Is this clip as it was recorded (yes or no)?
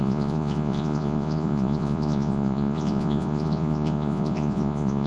no